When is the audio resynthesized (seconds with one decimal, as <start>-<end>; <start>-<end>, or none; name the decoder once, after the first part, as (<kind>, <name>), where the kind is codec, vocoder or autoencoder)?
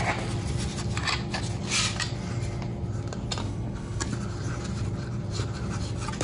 3.4-4.1 (codec, HILCodec)